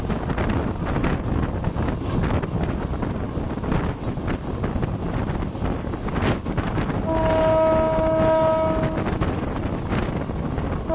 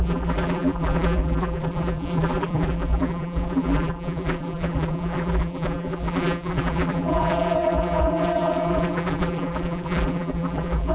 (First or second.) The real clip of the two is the first